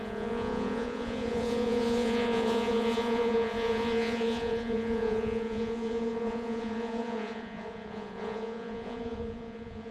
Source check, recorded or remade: remade